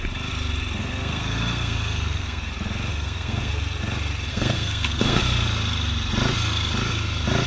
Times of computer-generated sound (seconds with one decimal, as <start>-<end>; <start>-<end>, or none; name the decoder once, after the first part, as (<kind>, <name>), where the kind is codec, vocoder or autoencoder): 0.8-2.5 (codec, SNAC); 2.9-3.5; 4.3-5.2